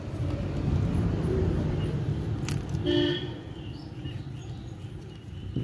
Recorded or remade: recorded